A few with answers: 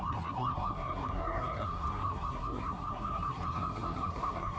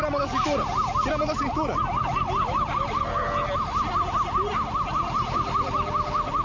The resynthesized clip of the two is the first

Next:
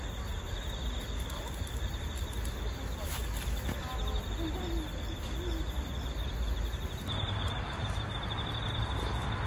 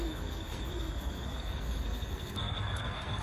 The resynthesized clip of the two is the second